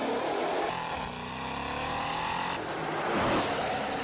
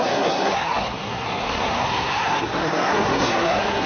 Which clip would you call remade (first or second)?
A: second